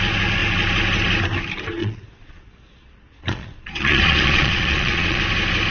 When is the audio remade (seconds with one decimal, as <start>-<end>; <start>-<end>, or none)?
1.8-5.2

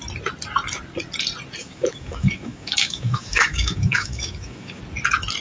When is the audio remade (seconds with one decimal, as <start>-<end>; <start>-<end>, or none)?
1.6-4.8

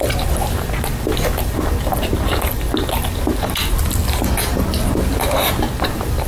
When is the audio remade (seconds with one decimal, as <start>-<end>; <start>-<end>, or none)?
none

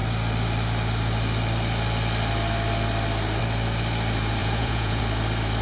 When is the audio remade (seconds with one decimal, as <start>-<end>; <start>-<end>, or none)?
4.4-5.0

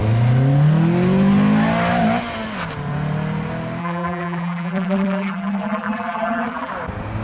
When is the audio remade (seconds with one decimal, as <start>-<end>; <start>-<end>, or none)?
3.8-6.7

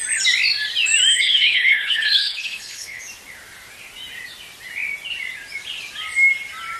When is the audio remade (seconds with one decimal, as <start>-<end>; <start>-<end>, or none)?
1.1-3.0

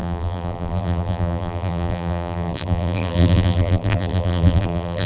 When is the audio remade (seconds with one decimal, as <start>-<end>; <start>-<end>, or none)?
0.0-5.1